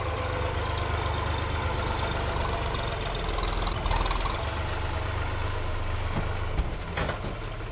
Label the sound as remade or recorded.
recorded